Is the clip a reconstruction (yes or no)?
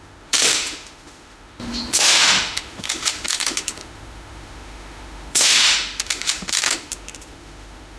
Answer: yes